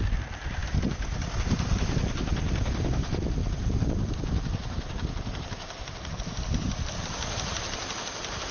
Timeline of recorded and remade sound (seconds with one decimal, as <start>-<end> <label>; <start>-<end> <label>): 0.0-8.5 recorded